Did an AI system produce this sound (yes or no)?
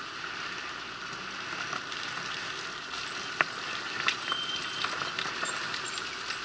no